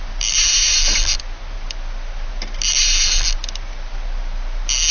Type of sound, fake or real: real